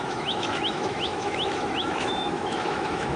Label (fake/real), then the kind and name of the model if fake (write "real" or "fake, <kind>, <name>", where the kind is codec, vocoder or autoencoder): fake, autoencoder, DAC-VAE